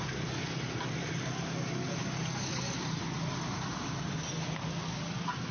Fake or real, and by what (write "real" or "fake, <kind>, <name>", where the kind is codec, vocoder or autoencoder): real